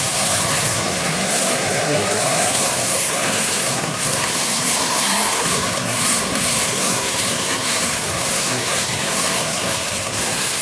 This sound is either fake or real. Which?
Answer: fake